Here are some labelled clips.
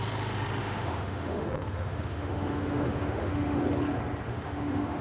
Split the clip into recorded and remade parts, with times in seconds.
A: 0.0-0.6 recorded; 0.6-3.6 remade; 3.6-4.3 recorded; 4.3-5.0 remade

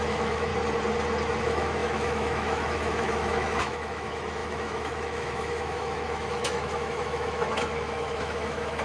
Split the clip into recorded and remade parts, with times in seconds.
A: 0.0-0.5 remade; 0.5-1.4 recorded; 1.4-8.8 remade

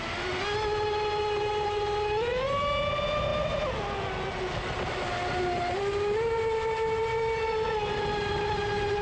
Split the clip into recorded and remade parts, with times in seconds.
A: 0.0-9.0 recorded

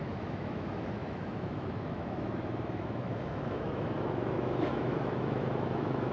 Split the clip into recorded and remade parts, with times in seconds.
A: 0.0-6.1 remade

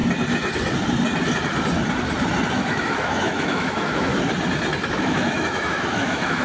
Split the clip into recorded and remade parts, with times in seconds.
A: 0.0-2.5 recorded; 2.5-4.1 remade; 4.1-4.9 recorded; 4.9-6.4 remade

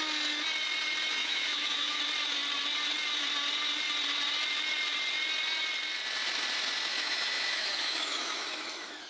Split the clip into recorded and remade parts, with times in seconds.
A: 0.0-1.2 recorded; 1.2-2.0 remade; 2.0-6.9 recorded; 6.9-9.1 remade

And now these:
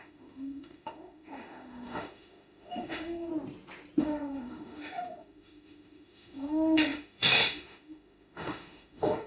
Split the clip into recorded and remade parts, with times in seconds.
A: 0.0-3.3 remade; 3.3-4.0 recorded; 4.0-9.3 remade